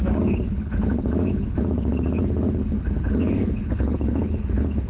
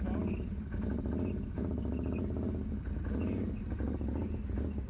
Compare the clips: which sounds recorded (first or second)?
second